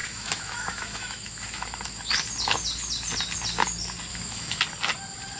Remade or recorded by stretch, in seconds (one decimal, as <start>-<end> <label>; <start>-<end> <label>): 0.0-2.2 remade; 2.2-4.1 recorded; 4.1-4.6 remade; 4.6-5.4 recorded